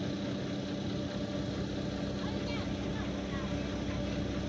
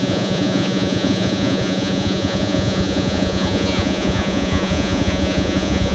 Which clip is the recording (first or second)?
first